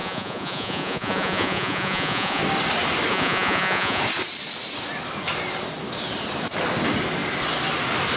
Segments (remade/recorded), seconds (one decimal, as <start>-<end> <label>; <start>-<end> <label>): 0.0-2.4 remade; 2.4-3.1 recorded; 3.1-4.0 remade; 4.0-8.2 recorded

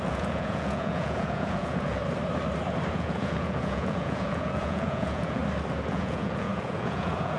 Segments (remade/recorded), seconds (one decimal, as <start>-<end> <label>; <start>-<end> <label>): 0.0-2.0 remade; 2.0-2.9 recorded; 2.9-5.4 remade; 5.4-5.9 recorded; 5.9-7.4 remade

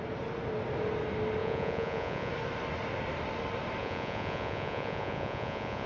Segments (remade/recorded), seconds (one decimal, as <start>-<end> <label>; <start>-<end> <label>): 0.0-1.4 recorded; 1.4-2.3 remade; 2.3-3.8 recorded; 3.8-5.9 remade

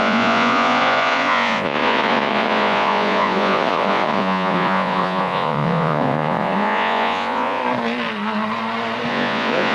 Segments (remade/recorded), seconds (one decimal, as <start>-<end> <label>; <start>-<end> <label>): 0.0-7.6 remade; 7.6-9.1 recorded; 9.1-9.7 remade

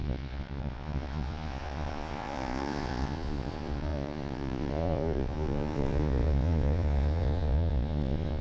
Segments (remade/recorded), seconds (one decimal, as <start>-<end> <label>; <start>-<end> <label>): 0.0-8.4 remade

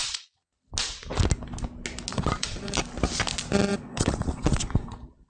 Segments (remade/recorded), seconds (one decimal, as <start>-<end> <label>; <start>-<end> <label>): 0.0-0.7 remade; 0.7-2.1 recorded; 2.1-2.7 remade; 2.7-3.7 recorded; 3.7-5.3 remade

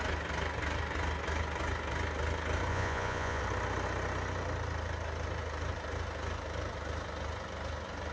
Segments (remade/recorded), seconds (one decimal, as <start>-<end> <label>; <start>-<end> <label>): 0.0-2.7 recorded; 2.7-3.4 remade; 3.4-8.1 recorded

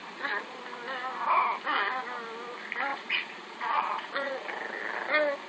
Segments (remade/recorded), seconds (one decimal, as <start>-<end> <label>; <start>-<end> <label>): 0.0-0.6 remade; 0.6-2.9 recorded; 2.9-4.5 remade; 4.5-5.5 recorded